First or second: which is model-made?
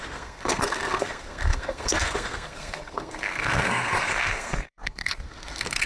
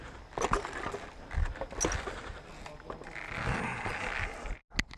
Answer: first